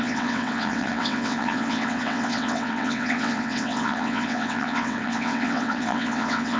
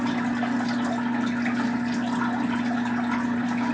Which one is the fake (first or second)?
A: first